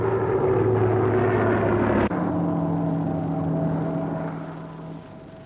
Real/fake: real